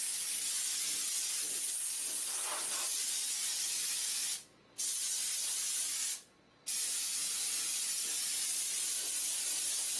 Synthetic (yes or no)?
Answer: no